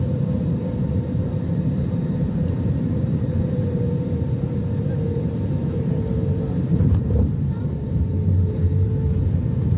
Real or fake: fake